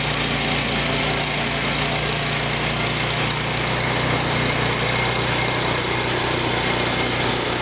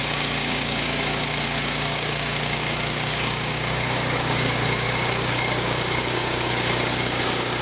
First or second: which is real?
first